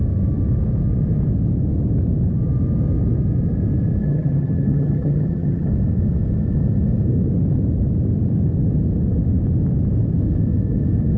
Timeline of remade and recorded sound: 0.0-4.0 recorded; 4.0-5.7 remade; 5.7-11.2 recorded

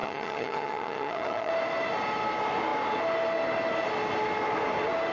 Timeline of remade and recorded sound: 0.0-1.5 remade; 1.5-5.1 recorded

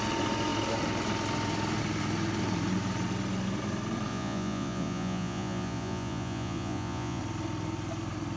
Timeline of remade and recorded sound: 0.0-4.1 recorded; 4.1-7.2 remade; 7.2-8.4 recorded

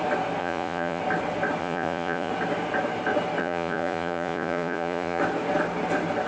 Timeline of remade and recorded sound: 0.0-0.4 recorded; 0.4-1.0 remade; 1.0-1.6 recorded; 1.6-2.3 remade; 2.3-3.4 recorded; 3.4-5.2 remade; 5.2-6.3 recorded

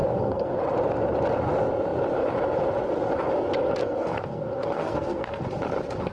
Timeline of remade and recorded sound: 0.0-0.6 remade; 0.6-3.8 recorded; 3.8-5.4 remade; 5.4-6.1 recorded

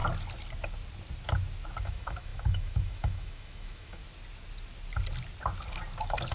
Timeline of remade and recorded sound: 0.0-1.8 recorded; 1.8-4.0 remade; 4.0-6.3 recorded

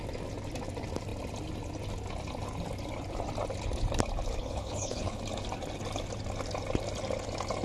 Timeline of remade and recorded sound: 0.0-4.4 recorded; 4.4-5.2 remade; 5.2-7.6 recorded

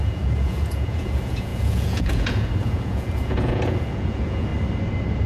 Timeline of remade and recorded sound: 0.0-4.5 remade; 4.5-5.3 recorded